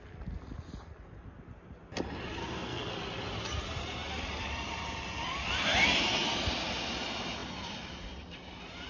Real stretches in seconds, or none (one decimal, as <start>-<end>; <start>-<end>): 0.0-2.4; 2.9-8.9